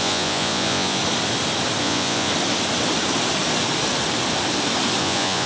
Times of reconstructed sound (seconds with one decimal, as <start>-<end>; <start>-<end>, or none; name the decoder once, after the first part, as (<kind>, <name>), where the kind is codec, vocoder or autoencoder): 0.0-1.0 (vocoder, Vocos); 1.8-2.3; 5.0-5.5